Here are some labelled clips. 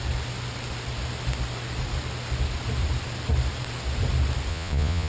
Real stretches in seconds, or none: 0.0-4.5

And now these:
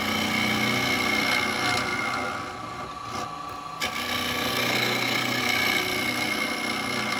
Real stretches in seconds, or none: 0.0-4.5; 5.4-7.2

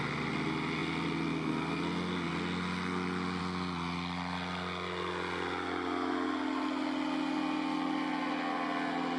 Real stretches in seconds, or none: 0.0-9.2